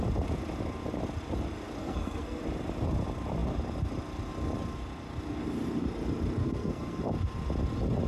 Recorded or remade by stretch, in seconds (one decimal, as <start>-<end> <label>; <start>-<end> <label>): 0.0-1.8 recorded; 1.8-2.4 remade; 2.4-6.4 recorded; 6.4-7.0 remade; 7.0-8.1 recorded